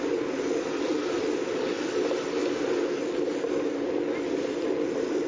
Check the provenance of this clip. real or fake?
real